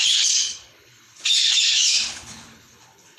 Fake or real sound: fake